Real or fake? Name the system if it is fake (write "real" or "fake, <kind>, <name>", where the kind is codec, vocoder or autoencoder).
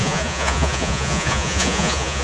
fake, vocoder, Vocos